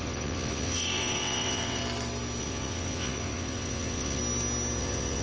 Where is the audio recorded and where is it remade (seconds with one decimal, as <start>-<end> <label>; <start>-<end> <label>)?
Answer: 0.0-1.8 remade; 1.8-2.4 recorded; 2.4-4.2 remade; 4.2-4.8 recorded; 4.8-5.2 remade